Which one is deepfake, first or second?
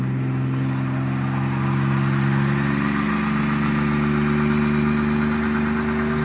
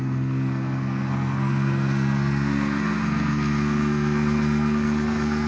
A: second